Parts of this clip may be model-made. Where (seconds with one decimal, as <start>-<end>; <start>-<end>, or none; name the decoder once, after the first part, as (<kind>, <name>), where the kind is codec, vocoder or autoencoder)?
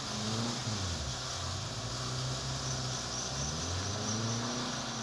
none